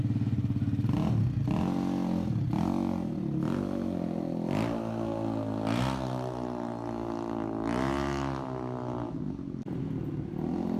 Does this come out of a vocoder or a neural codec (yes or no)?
no